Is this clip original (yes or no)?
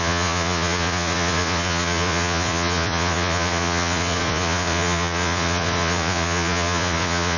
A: no